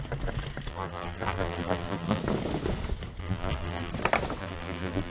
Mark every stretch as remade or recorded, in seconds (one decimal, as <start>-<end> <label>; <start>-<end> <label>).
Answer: 0.0-0.7 recorded; 0.7-2.2 remade; 2.2-3.2 recorded; 3.2-3.9 remade; 3.9-4.4 recorded; 4.4-5.1 remade